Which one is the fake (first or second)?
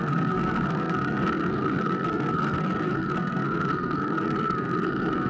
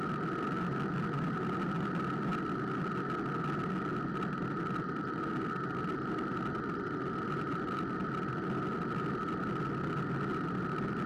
first